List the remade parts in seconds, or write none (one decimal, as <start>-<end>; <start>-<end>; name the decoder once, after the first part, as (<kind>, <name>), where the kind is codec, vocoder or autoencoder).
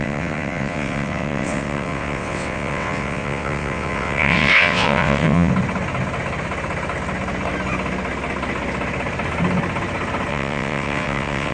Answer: 0.0-5.5 (vocoder, WaveNeXt); 10.3-11.5